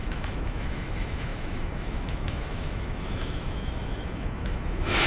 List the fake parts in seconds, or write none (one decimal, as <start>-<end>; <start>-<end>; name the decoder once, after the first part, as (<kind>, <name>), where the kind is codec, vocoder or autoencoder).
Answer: 0.0-5.1 (autoencoder, DAC-VAE)